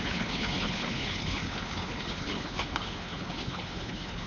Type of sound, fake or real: fake